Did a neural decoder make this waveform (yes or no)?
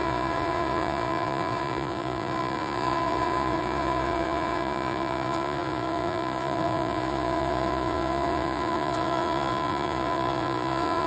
yes